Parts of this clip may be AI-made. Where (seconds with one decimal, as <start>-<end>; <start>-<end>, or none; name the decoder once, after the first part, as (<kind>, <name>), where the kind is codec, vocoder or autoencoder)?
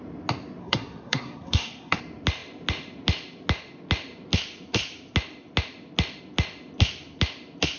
0.6-2.0 (codec, SNAC)